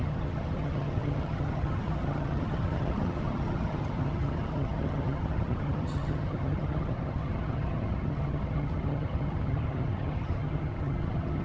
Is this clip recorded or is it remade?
remade